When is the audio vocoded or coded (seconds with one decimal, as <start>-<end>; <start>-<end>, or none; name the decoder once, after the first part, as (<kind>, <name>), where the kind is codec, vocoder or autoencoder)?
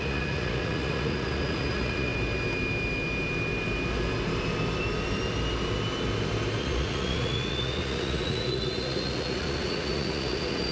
0.0-2.1 (vocoder, Vocos); 6.6-10.7